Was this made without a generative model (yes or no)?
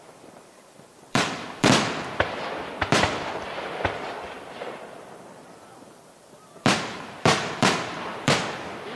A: no